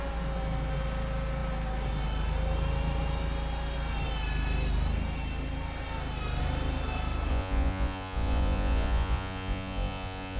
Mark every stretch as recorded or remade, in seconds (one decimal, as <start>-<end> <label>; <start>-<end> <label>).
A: 0.0-7.3 recorded; 7.3-10.4 remade